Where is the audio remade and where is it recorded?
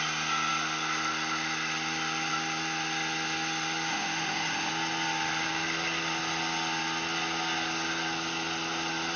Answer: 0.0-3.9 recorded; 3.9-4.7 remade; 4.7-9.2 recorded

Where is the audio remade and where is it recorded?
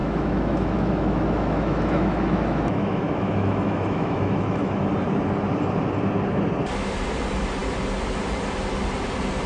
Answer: 0.0-4.9 remade; 4.9-9.5 recorded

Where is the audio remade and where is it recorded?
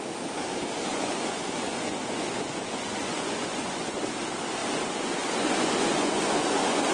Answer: 0.0-0.9 recorded; 0.9-4.0 remade; 4.0-4.6 recorded; 4.6-6.9 remade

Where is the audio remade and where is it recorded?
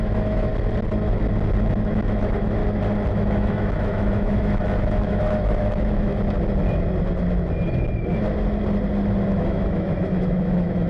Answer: 0.0-0.5 remade; 0.5-1.6 recorded; 1.6-2.6 remade; 2.6-3.1 recorded; 3.1-6.1 remade; 6.1-9.3 recorded; 9.3-10.9 remade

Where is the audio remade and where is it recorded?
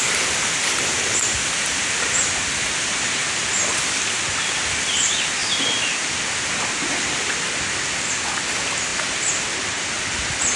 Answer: 0.0-10.6 recorded